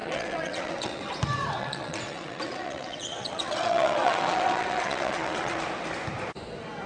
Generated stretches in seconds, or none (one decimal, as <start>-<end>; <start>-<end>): 0.0-1.1; 1.6-5.6